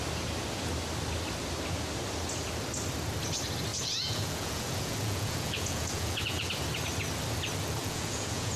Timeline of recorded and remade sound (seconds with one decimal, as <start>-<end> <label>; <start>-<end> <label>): 0.0-3.7 recorded; 3.7-6.5 remade; 6.5-7.8 recorded; 7.8-8.6 remade